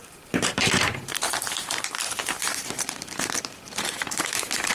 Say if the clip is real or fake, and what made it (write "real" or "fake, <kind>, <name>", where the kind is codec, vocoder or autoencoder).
fake, vocoder, BigVGAN v2